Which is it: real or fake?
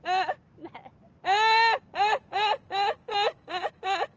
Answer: real